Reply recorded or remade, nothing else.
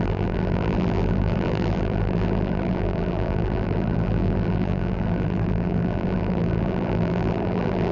remade